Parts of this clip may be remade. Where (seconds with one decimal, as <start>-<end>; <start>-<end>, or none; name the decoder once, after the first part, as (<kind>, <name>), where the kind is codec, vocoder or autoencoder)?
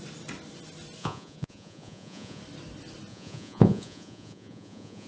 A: 1.0-2.4 (vocoder, Vocos); 3.1-5.1